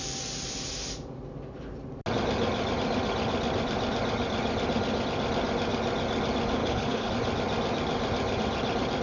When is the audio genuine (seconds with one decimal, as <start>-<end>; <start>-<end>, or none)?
0.0-6.6; 7.1-9.0